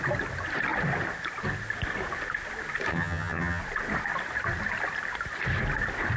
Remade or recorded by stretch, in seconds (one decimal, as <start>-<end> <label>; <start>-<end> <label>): 0.0-2.9 recorded; 2.9-3.6 remade; 3.6-6.2 recorded